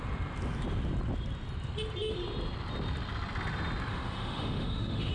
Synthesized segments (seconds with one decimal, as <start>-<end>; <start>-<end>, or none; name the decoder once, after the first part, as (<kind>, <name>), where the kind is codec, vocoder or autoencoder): 3.9-5.1 (autoencoder, DAC-VAE)